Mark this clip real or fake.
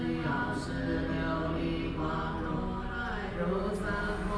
real